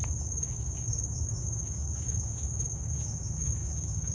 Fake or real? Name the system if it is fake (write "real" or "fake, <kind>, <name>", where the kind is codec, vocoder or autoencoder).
fake, autoencoder, DAC-VAE